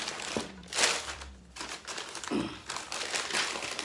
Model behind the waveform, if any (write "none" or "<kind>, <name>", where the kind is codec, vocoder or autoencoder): vocoder, BigVGAN v2